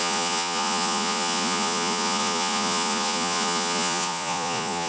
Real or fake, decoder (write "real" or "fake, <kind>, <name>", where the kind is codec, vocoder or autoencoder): fake, vocoder, Vocos